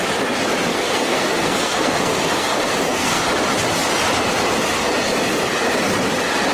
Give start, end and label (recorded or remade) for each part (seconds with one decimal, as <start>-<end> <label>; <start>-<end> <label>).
0.0-0.7 recorded; 0.7-3.2 remade; 3.2-6.5 recorded